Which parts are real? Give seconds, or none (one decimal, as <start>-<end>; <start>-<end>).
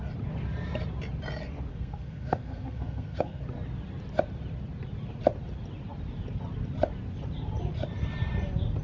0.0-1.7; 3.4-8.8